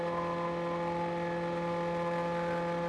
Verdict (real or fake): real